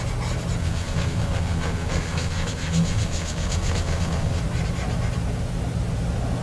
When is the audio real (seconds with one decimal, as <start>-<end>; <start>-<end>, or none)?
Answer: 0.0-0.6; 4.4-6.4